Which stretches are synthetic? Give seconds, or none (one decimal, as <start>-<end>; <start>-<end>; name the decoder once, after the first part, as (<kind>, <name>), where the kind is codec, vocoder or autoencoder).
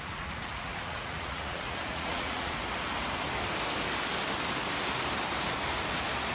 0.0-2.6 (vocoder, Vocos)